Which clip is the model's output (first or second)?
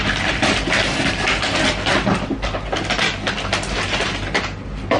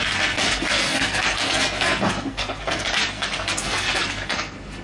second